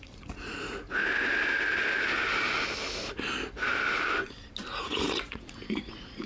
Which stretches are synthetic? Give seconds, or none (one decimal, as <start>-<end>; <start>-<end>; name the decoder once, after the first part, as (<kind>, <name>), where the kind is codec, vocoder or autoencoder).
0.0-1.0 (vocoder, Vocos); 4.8-6.3